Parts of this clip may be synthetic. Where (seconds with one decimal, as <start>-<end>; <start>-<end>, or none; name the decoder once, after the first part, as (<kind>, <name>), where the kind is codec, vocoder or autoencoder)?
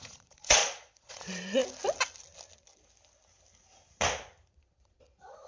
0.0-1.6 (vocoder, Vocos); 4.5-5.5